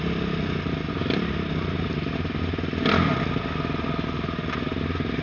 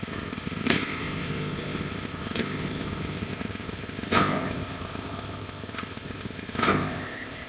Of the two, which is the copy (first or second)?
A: second